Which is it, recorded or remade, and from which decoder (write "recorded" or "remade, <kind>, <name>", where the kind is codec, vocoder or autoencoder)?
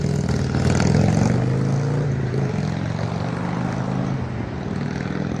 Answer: recorded